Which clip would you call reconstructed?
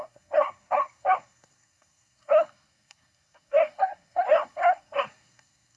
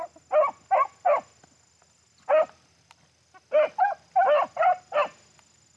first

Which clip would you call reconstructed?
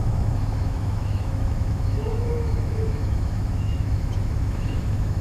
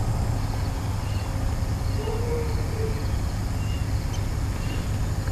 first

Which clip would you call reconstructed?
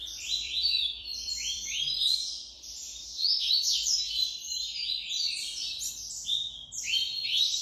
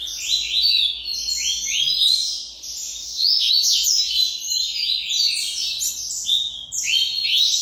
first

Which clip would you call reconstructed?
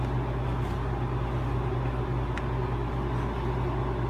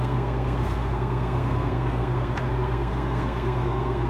second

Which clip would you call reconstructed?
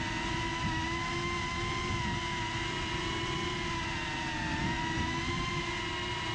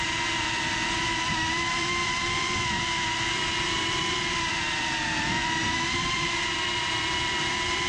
second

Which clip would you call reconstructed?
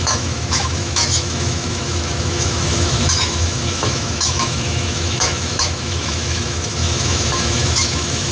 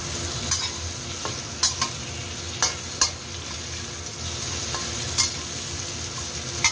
first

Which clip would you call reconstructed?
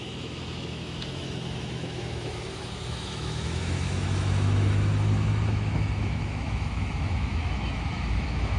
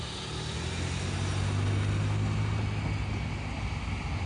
first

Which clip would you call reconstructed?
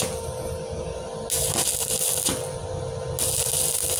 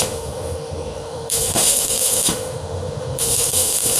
second